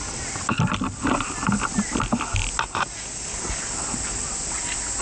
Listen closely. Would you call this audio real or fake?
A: real